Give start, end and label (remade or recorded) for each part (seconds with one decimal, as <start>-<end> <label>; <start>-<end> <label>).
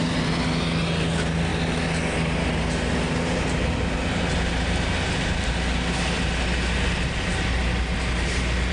0.0-8.7 recorded